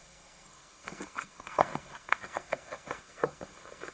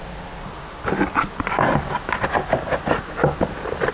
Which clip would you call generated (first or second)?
first